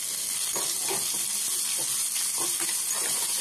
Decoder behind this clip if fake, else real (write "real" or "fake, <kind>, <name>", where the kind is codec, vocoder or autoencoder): real